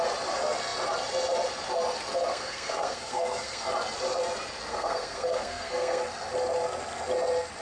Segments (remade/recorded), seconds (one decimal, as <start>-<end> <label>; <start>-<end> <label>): 0.0-2.3 recorded; 2.3-3.7 remade; 3.7-4.7 recorded; 4.7-6.0 remade; 6.0-7.6 recorded